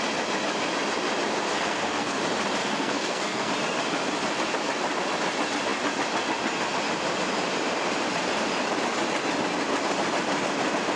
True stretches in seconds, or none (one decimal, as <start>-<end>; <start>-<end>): 0.0-1.5; 2.2-2.6; 3.5-11.0